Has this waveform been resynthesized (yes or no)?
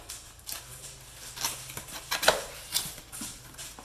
no